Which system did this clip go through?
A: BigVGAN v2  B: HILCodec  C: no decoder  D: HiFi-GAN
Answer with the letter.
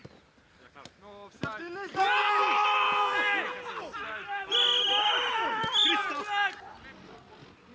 C